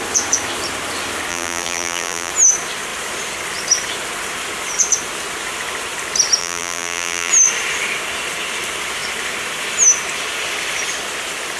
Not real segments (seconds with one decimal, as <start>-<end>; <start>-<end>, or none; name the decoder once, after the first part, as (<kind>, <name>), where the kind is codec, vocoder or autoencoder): 1.3-2.3 (vocoder, BigVGAN v2); 6.4-7.3